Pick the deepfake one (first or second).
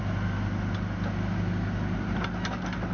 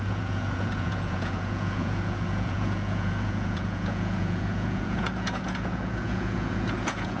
second